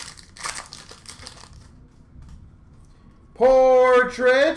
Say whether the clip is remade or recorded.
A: recorded